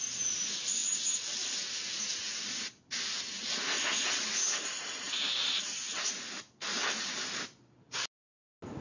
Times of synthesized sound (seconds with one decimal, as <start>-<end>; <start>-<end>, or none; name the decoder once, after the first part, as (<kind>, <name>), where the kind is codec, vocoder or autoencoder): none